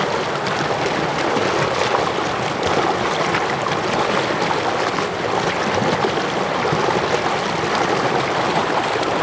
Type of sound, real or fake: real